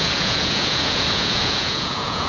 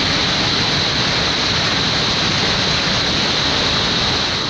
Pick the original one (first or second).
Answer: second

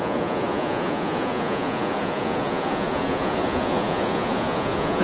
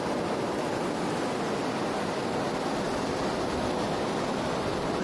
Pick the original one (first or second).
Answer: second